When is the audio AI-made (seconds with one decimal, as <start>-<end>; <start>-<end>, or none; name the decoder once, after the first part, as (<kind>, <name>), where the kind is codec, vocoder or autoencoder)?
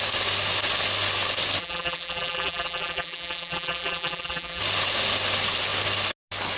1.6-4.6 (vocoder, BigVGAN v2)